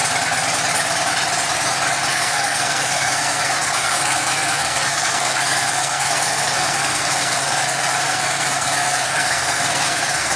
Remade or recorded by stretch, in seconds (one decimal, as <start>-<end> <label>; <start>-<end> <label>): 0.0-2.1 recorded; 2.1-10.4 remade